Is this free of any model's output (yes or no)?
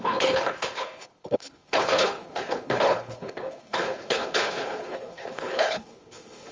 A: no